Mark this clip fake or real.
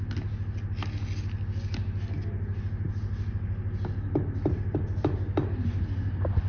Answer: real